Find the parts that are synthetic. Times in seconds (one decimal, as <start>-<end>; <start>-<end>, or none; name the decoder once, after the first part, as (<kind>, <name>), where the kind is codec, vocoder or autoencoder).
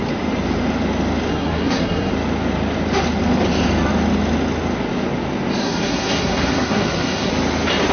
1.3-2.1 (codec, SNAC); 5.6-7.3